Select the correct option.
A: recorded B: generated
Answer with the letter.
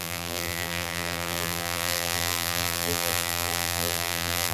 B